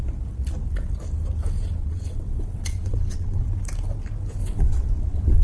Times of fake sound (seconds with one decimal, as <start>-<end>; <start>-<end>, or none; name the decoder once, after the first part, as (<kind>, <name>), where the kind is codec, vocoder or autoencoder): 1.8-3.5 (vocoder, WaveNeXt); 4.4-5.4